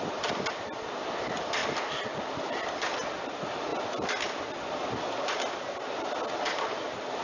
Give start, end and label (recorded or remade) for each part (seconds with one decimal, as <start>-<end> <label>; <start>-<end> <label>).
0.0-7.2 recorded